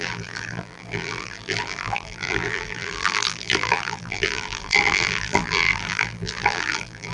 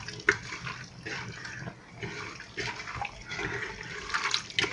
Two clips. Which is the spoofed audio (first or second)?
first